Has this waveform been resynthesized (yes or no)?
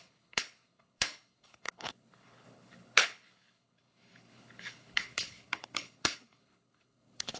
yes